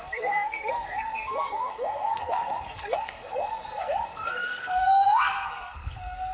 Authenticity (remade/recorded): remade